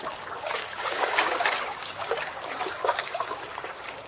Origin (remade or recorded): remade